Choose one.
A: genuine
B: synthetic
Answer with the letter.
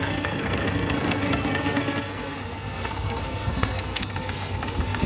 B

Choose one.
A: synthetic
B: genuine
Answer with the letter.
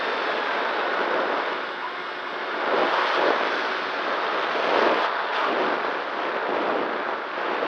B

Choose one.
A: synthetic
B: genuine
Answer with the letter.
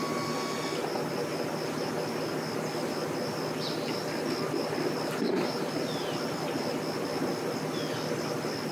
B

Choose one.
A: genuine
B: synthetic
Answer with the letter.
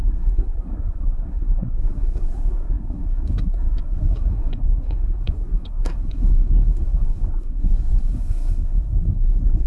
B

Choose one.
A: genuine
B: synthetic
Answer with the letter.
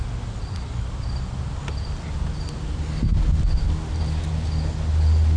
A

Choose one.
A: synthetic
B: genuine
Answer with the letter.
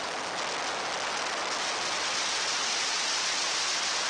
B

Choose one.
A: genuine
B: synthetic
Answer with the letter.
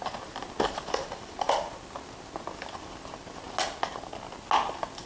A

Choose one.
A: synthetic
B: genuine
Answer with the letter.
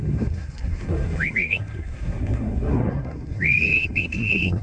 A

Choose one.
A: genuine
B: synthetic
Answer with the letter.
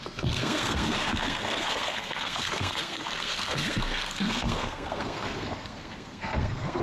B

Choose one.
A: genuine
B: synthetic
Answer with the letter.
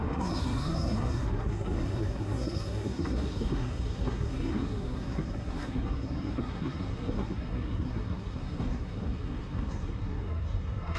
B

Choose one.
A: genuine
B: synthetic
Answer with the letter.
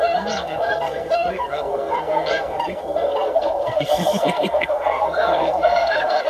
B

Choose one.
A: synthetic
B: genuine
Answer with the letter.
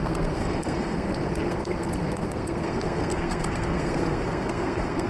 A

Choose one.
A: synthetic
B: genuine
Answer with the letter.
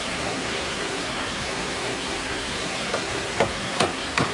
A